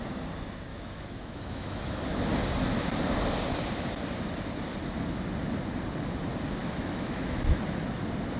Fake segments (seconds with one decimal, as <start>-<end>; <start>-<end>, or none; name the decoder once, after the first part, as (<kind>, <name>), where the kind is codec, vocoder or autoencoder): 0.7-2.0 (autoencoder, DAC-VAE); 6.6-8.0